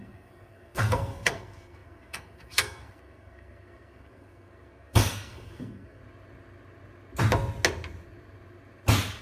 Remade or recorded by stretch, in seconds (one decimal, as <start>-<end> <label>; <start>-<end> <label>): 0.0-6.0 remade; 6.0-9.2 recorded